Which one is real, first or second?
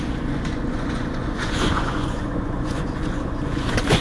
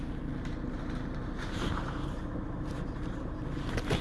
second